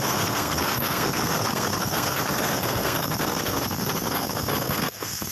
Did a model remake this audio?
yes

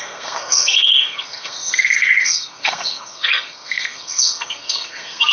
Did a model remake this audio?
yes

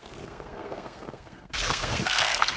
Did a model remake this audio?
yes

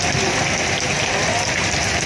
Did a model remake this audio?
no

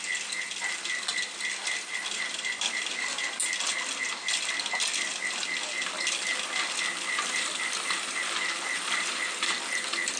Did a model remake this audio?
no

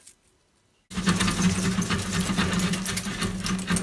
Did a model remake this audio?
no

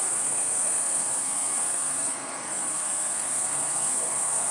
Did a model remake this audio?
yes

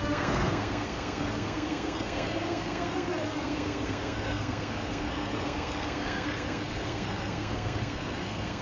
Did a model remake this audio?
yes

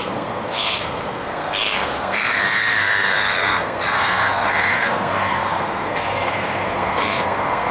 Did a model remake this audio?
yes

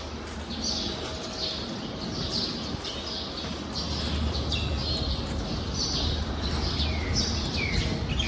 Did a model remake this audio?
no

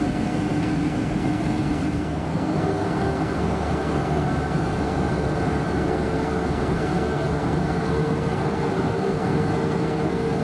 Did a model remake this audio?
yes